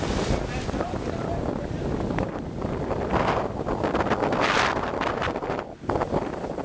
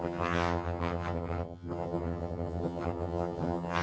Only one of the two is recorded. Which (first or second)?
first